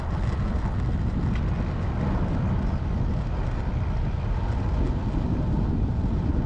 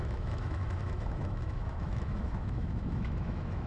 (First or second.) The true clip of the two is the first